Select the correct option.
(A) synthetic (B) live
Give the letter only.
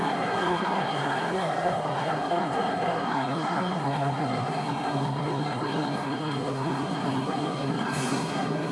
A